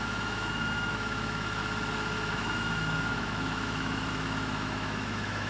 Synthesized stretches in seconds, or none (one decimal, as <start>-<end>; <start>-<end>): 0.0-1.6; 2.3-5.5